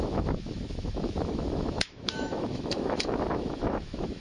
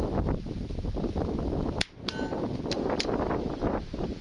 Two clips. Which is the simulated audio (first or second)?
first